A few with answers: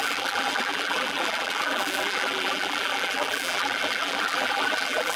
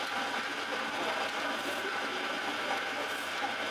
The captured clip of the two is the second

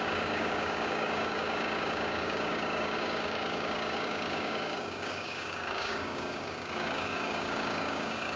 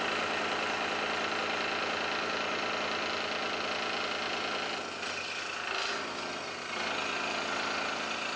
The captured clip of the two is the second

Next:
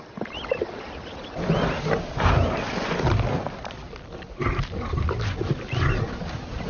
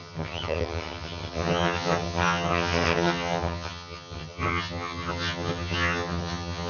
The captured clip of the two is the first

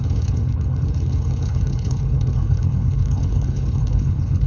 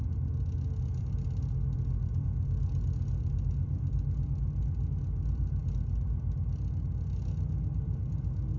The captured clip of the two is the second